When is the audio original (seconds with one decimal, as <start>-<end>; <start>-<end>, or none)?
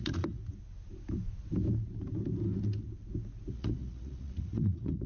0.4-3.5